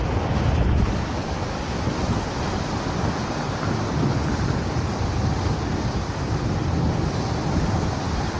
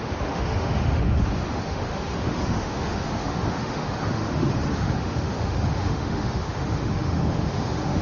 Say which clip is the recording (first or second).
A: first